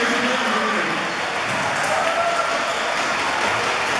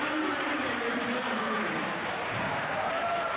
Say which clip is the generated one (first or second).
second